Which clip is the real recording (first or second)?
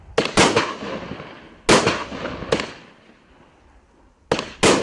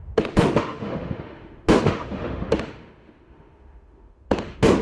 first